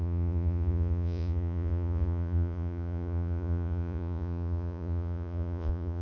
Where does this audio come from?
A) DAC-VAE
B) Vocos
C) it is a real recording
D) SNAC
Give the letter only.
B